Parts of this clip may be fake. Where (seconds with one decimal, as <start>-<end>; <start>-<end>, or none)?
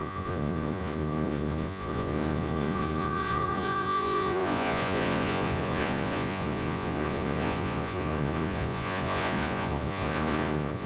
0.0-10.9